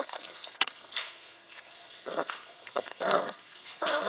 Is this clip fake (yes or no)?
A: yes